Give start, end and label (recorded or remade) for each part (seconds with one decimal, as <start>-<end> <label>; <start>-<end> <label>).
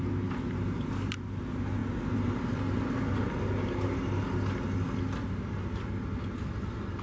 0.0-7.0 recorded